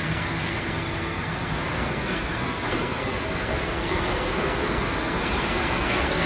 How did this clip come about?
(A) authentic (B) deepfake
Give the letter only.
B